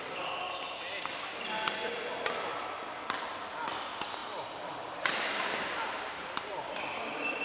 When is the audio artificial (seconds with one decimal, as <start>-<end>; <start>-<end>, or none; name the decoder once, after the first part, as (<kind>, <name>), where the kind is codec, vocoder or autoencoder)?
4.2-6.7 (vocoder, BigVGAN v2)